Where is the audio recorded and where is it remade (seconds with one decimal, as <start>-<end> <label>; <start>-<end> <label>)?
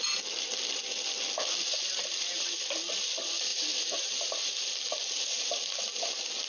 0.0-3.5 recorded; 3.5-4.4 remade; 4.4-6.5 recorded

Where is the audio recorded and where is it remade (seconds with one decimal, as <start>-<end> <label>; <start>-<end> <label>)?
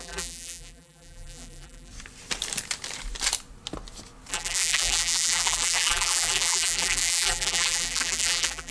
0.0-1.9 remade; 1.9-4.3 recorded; 4.3-8.7 remade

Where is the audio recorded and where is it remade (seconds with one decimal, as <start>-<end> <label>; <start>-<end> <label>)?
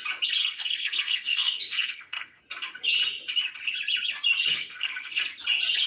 0.0-0.4 recorded; 0.4-2.4 remade; 2.4-4.5 recorded; 4.5-5.2 remade; 5.2-5.9 recorded